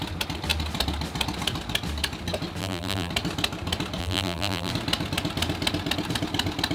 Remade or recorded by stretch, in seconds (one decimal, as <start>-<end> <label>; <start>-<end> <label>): 0.0-2.6 recorded; 2.6-3.1 remade; 3.1-4.0 recorded; 4.0-4.7 remade; 4.7-6.7 recorded

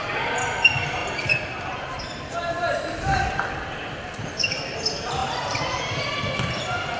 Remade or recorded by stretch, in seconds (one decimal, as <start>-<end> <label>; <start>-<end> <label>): 0.0-1.0 recorded; 1.0-2.0 remade; 2.0-5.2 recorded; 5.2-6.0 remade; 6.0-7.0 recorded

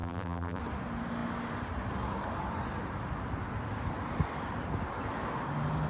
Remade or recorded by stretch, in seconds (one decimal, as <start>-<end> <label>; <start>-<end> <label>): 0.0-0.6 remade; 0.6-5.9 recorded

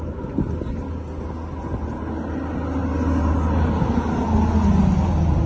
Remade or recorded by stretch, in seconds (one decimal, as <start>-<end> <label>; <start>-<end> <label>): 0.0-5.5 recorded

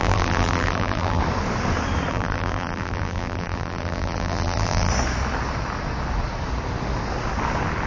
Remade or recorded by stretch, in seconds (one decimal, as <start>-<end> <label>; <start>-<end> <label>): 0.0-1.2 remade; 1.2-2.1 recorded; 2.1-4.9 remade; 4.9-7.9 recorded

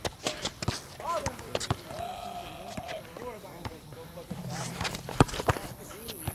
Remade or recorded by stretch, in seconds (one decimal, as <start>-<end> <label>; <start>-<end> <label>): 0.0-3.7 recorded; 3.7-5.5 remade; 5.5-6.3 recorded

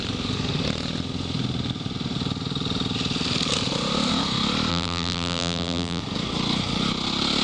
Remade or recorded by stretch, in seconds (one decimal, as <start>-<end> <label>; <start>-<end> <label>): 0.0-4.7 recorded; 4.7-6.0 remade; 6.0-7.4 recorded

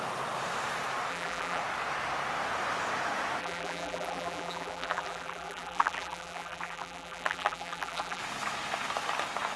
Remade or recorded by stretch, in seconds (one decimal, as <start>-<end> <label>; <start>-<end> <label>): 0.0-1.1 recorded; 1.1-1.6 remade; 1.6-3.4 recorded; 3.4-8.2 remade; 8.2-9.6 recorded